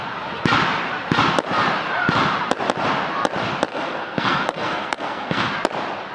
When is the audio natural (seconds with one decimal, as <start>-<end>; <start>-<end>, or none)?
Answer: 0.0-3.7; 5.5-6.1